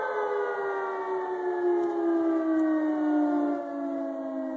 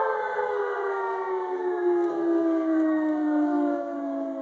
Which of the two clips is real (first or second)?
first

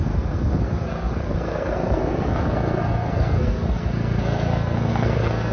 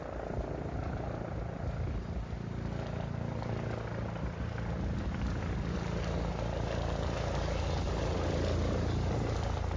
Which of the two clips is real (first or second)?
second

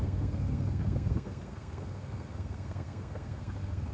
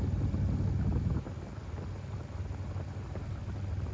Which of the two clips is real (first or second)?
second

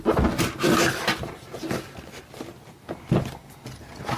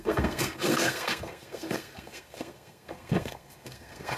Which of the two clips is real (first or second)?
first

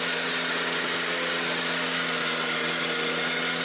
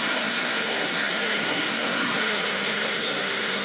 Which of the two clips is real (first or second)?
first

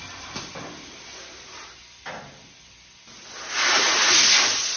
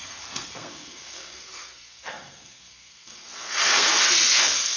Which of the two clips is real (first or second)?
first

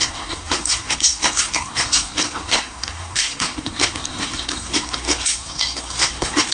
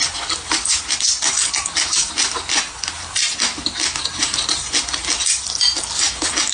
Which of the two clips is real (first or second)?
second